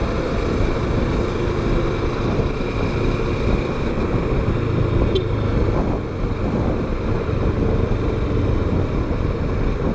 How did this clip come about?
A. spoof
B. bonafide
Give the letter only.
B